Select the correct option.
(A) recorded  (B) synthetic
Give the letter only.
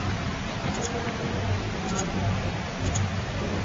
A